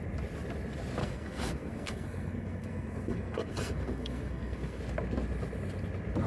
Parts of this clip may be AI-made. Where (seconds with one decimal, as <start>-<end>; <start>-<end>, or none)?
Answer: 1.0-4.8